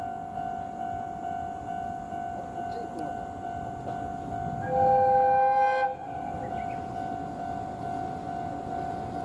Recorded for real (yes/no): yes